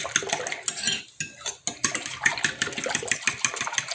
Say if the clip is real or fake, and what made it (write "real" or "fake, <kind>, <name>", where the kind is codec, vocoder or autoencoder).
real